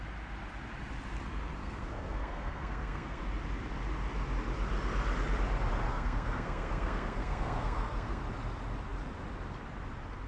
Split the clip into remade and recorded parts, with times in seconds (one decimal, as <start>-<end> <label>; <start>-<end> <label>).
0.0-1.6 recorded; 1.6-3.2 remade; 3.2-5.9 recorded; 5.9-8.2 remade; 8.2-10.3 recorded